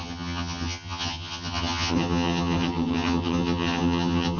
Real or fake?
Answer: fake